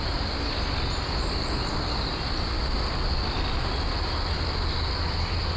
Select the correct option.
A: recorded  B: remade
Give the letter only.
A